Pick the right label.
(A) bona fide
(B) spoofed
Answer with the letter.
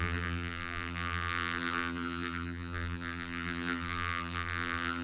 B